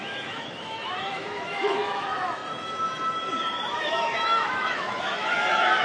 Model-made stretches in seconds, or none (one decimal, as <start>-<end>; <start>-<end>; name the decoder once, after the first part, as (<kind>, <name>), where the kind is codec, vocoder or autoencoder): 0.0-2.4 (autoencoder, DAC-VAE); 3.8-5.8